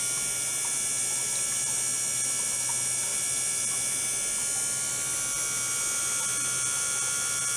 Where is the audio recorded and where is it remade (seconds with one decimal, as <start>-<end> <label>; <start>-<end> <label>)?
0.0-7.6 recorded